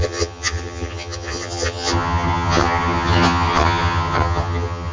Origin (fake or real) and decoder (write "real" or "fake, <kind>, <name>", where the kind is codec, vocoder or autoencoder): fake, vocoder, HiFi-GAN